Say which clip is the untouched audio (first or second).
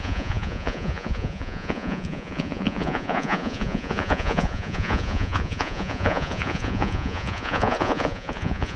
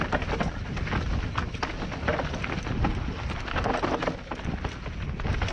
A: second